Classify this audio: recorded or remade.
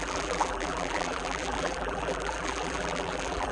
remade